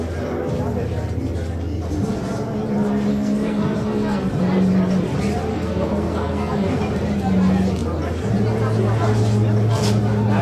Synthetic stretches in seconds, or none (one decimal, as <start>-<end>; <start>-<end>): 3.1-4.3; 5.5-6.8